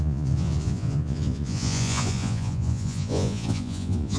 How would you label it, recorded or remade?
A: remade